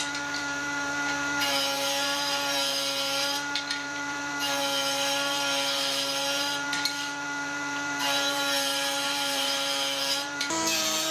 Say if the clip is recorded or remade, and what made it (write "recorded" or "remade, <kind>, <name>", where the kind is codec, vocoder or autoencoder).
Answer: remade, vocoder, BigVGAN v2